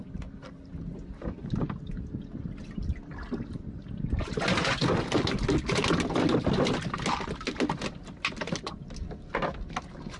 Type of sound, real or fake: real